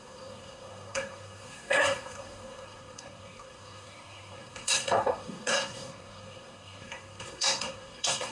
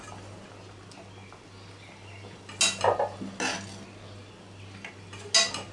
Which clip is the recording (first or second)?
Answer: second